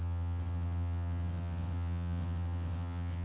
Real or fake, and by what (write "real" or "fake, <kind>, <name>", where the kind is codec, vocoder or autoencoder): fake, vocoder, WaveNeXt